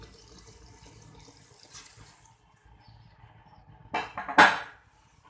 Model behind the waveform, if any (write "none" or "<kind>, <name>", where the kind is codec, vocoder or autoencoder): none